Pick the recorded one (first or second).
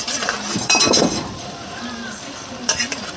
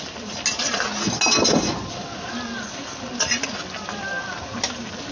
second